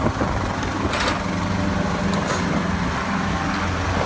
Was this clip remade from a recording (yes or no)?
no